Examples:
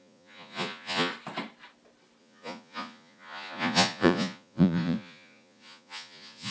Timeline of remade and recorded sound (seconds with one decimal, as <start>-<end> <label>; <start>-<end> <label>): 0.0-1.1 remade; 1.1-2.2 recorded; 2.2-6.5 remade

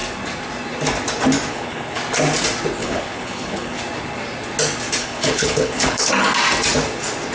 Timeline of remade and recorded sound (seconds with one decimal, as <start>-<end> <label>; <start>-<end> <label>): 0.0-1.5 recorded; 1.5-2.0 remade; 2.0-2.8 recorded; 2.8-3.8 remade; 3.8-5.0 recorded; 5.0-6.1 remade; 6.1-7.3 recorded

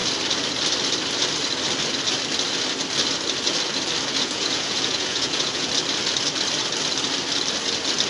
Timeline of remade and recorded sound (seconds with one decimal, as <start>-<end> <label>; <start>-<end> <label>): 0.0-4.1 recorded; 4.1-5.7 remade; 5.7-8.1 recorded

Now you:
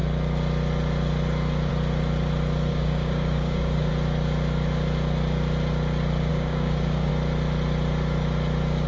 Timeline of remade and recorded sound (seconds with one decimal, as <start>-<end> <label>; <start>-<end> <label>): 0.0-2.7 recorded; 2.7-3.9 remade; 3.9-6.3 recorded; 6.3-7.1 remade; 7.1-8.9 recorded

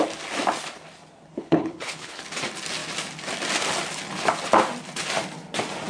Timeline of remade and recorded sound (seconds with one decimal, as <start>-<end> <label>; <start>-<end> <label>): 0.0-1.3 recorded; 1.3-2.2 remade; 2.2-5.9 recorded

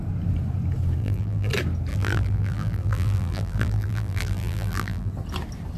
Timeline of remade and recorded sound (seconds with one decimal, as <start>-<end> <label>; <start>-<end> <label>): 0.0-1.0 recorded; 1.0-1.5 remade; 1.5-1.9 recorded; 1.9-5.1 remade; 5.1-5.8 recorded